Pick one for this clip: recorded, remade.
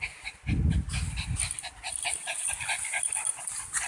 recorded